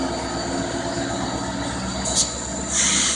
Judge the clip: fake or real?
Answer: real